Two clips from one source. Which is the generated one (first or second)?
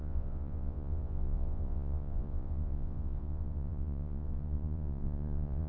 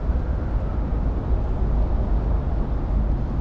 first